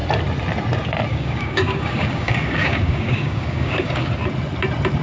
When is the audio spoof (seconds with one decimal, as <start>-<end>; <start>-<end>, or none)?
1.1-4.1